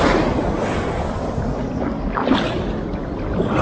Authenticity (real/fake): real